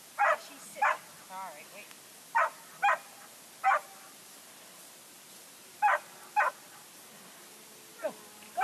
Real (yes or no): yes